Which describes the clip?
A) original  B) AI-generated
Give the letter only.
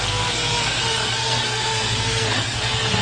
B